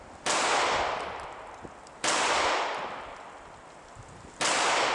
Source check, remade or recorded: recorded